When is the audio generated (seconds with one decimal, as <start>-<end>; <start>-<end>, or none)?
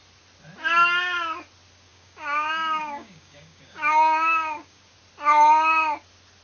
1.9-4.8